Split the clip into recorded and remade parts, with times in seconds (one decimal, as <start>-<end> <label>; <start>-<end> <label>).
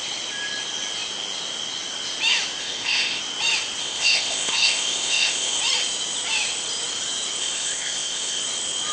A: 0.0-2.6 recorded; 2.6-3.2 remade; 3.2-3.8 recorded; 3.8-5.6 remade; 5.6-7.4 recorded; 7.4-8.4 remade; 8.4-8.9 recorded